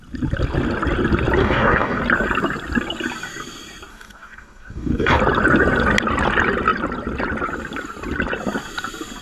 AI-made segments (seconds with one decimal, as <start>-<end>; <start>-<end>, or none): 1.4-2.0; 3.9-5.2